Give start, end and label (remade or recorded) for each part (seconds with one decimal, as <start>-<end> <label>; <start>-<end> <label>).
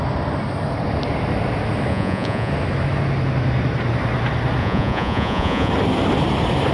0.0-1.9 recorded; 1.9-2.5 remade; 2.5-4.6 recorded; 4.6-5.7 remade; 5.7-6.7 recorded